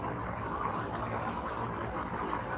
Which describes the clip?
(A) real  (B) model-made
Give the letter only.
A